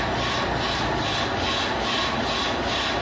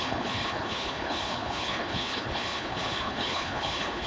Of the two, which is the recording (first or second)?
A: first